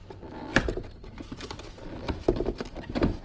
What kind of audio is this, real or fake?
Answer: real